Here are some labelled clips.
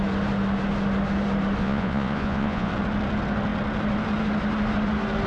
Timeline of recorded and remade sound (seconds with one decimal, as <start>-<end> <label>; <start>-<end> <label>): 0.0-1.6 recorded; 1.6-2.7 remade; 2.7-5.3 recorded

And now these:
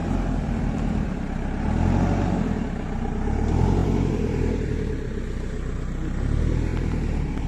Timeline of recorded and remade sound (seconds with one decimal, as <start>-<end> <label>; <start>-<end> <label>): 0.0-3.8 recorded; 3.8-4.7 remade; 4.7-6.7 recorded; 6.7-7.5 remade

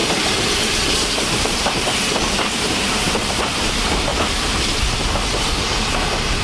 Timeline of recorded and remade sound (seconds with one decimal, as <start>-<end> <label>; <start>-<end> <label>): 0.0-4.1 remade; 4.1-5.6 recorded; 5.6-6.4 remade

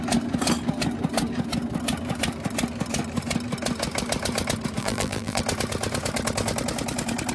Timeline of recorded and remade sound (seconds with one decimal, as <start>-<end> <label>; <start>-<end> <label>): 0.0-4.8 recorded; 4.8-5.4 remade; 5.4-7.3 recorded

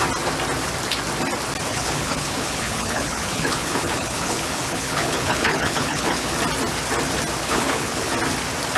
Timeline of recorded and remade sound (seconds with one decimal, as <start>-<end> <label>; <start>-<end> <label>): 0.0-1.7 recorded; 1.7-6.3 remade; 6.3-7.4 recorded; 7.4-8.1 remade; 8.1-8.8 recorded

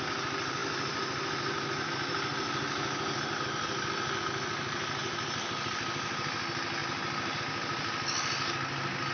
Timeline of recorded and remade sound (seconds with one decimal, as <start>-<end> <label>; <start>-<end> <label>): 0.0-9.1 recorded